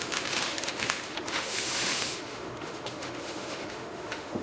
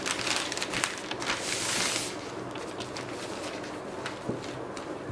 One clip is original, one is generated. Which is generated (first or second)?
first